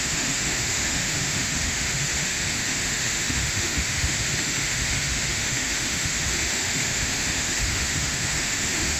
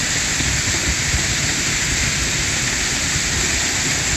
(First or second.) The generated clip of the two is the first